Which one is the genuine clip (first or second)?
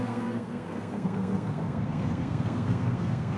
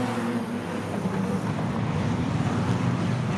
second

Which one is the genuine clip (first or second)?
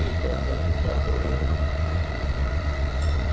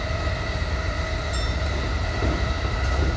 second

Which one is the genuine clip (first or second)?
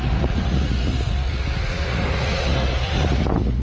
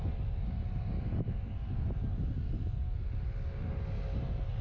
second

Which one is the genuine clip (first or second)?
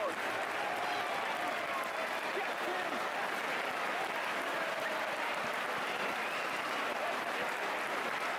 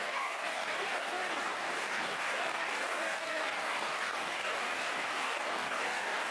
first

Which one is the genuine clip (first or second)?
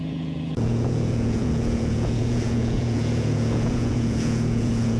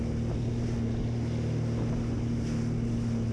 second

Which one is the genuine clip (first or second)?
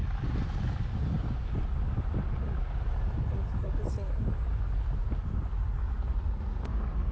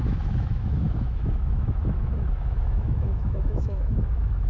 first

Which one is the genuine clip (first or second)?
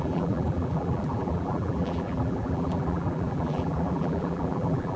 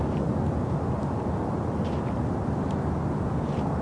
second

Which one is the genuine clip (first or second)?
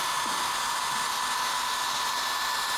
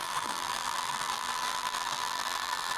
first